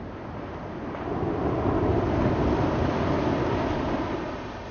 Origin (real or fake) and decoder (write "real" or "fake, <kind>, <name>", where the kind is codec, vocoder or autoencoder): real